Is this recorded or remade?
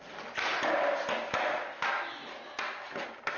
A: recorded